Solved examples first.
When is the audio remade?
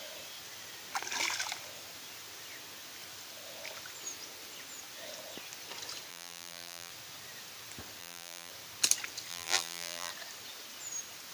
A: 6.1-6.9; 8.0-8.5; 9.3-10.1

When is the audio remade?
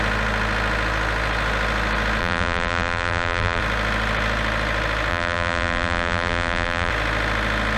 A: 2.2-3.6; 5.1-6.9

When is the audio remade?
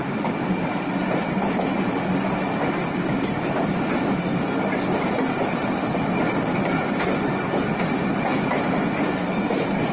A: none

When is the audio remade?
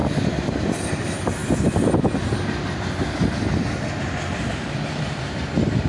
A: 0.6-1.4; 4.2-5.9